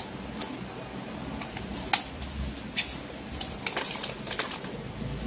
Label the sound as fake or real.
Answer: real